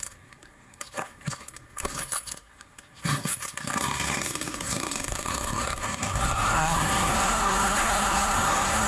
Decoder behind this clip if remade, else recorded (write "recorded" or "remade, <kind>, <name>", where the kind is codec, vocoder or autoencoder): remade, codec, SNAC